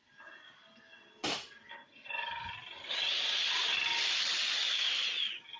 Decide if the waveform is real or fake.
real